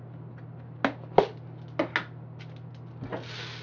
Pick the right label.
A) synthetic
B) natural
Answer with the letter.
B